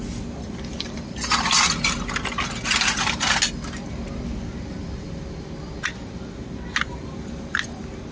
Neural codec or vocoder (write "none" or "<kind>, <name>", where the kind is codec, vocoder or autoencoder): none